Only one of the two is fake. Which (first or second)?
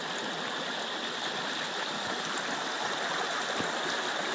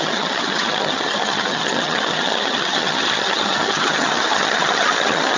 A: second